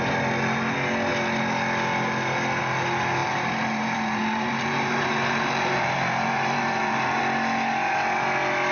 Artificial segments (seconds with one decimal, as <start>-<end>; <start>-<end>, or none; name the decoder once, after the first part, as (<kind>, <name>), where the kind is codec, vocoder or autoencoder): 3.2-7.2 (vocoder, BigVGAN v2)